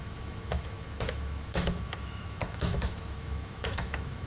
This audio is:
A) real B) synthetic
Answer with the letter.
B